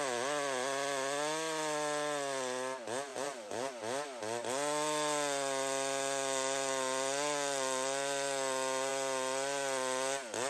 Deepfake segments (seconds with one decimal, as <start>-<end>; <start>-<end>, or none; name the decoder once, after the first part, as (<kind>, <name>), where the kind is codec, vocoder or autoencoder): 3.1-3.7 (vocoder, BigVGAN v2)